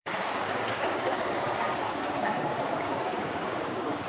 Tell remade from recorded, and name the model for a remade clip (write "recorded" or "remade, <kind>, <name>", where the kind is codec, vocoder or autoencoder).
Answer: remade, codec, DAC